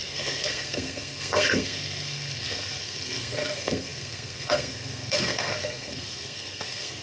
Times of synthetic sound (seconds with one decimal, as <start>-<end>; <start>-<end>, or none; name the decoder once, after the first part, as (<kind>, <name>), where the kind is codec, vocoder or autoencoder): 0.0-7.0 (codec, SNAC)